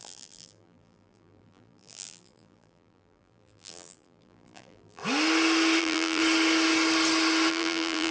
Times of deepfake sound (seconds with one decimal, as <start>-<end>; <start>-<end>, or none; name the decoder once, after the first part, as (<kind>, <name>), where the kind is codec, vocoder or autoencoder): 0.0-5.0 (vocoder, BigVGAN v2); 5.8-6.2; 7.5-8.1